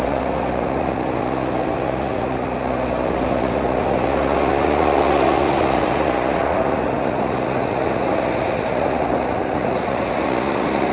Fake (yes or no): yes